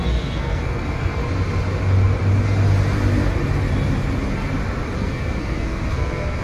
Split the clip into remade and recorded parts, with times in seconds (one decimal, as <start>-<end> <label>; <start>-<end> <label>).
0.0-1.2 remade; 1.2-5.0 recorded; 5.0-6.4 remade